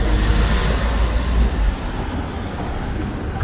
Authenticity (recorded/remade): recorded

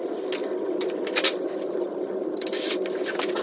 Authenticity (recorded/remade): recorded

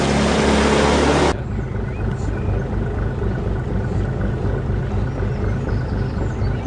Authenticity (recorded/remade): recorded